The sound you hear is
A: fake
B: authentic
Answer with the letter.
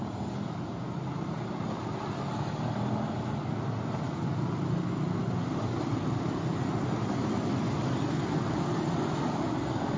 B